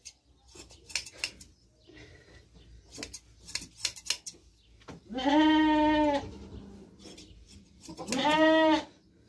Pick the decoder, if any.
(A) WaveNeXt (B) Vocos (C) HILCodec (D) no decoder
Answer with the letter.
D